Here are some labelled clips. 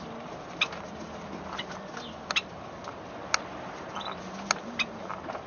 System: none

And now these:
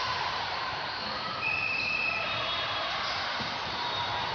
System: vocoder, BigVGAN v2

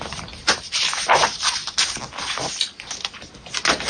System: none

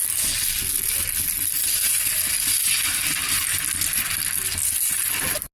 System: none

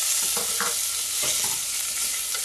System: none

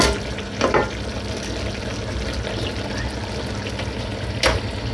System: none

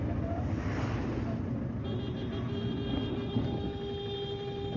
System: none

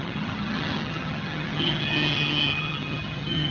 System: vocoder, HiFi-GAN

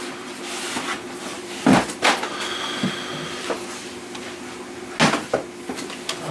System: none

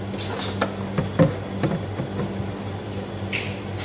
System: none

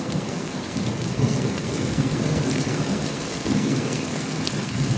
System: codec, SNAC